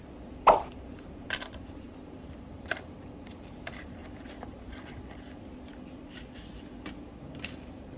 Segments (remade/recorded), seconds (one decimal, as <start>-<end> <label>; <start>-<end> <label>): 0.0-4.0 remade; 4.0-7.2 recorded; 7.2-8.0 remade